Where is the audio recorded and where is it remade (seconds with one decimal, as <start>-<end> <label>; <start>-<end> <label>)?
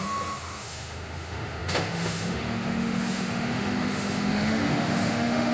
0.0-5.5 remade